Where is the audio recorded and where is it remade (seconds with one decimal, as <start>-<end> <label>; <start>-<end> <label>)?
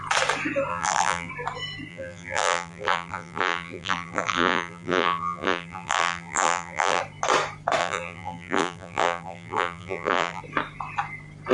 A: 0.0-0.7 recorded; 0.7-1.3 remade; 1.3-1.9 recorded; 1.9-7.0 remade; 7.0-7.8 recorded; 7.8-10.4 remade; 10.4-11.5 recorded